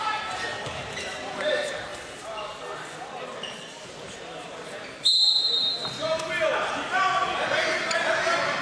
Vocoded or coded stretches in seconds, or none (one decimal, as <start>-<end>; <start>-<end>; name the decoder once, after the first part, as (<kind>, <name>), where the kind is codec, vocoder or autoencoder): 0.0-0.5 (vocoder, BigVGAN v2); 1.0-1.9; 3.5-4.8